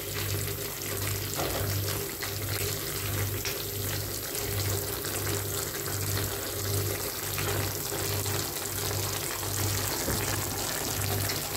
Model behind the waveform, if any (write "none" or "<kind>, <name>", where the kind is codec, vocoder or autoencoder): none